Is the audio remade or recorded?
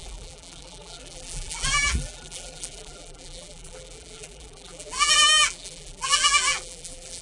remade